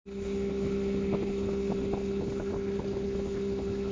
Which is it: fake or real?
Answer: real